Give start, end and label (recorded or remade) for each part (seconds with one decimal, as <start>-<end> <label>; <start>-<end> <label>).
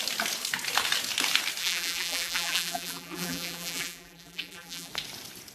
0.0-1.6 recorded; 1.6-4.9 remade; 4.9-5.5 recorded